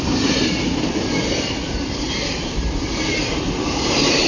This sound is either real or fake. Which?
fake